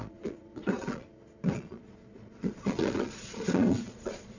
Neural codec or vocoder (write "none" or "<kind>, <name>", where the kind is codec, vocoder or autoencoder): vocoder, Vocos